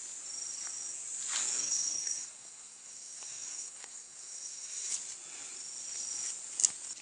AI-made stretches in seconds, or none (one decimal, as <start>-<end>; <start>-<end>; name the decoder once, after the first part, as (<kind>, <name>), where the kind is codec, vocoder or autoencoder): 1.6-4.9 (codec, SNAC)